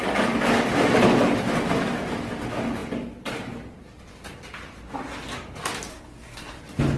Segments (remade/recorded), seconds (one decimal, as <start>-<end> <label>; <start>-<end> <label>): 0.0-5.9 recorded; 5.9-6.6 remade; 6.6-7.0 recorded